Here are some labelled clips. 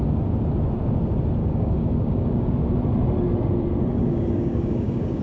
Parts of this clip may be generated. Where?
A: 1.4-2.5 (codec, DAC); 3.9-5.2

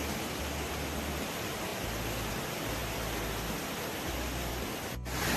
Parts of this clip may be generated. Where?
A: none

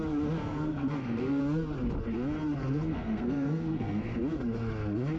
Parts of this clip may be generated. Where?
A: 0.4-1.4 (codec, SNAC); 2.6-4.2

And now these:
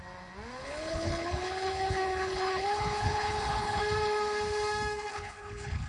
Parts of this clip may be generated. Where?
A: 0.6-3.8 (codec, HILCodec); 5.1-5.9